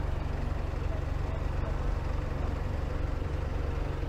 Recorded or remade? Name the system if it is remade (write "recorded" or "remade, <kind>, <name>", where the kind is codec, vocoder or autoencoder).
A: recorded